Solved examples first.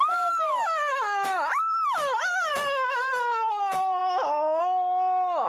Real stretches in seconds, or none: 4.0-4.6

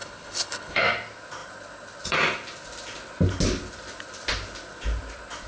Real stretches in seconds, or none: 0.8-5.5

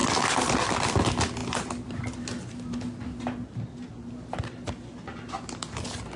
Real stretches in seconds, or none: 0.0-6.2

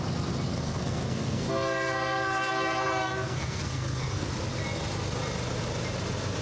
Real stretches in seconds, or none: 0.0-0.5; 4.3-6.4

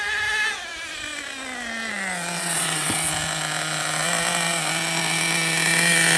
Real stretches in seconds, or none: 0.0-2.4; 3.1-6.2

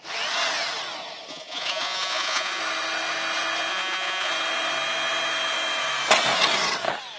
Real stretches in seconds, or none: 0.0-1.3; 2.6-3.7; 4.3-7.2

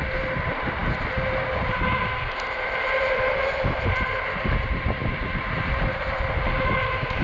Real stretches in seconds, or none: 0.0-7.2